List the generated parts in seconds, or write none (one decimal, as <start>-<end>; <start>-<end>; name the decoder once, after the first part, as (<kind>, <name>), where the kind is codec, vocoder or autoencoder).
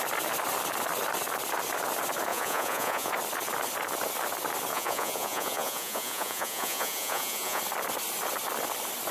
2.3-3.1 (vocoder, Vocos); 4.7-7.6